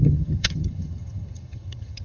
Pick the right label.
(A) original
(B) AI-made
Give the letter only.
B